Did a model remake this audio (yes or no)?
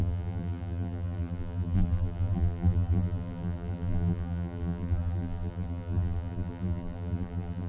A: yes